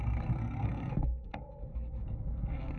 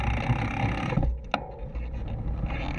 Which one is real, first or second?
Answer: second